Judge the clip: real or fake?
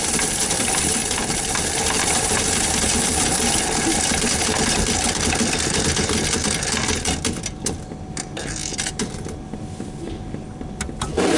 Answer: fake